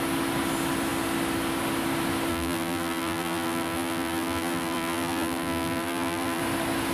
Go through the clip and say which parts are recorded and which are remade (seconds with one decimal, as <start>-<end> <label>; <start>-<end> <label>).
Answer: 0.0-2.3 recorded; 2.3-6.4 remade; 6.4-6.9 recorded